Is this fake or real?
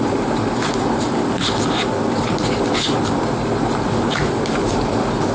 real